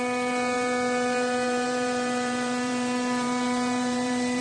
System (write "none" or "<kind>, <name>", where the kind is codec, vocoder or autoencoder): vocoder, BigVGAN v2